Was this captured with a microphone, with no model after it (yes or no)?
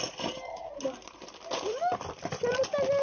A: yes